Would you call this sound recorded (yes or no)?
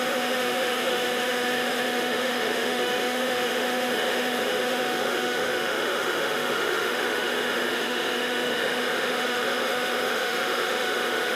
no